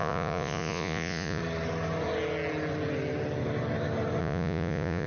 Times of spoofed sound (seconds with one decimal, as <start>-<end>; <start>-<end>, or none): 0.0-1.4; 4.2-5.1